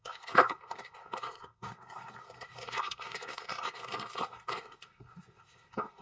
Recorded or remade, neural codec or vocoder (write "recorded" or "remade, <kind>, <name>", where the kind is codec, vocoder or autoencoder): remade, codec, SNAC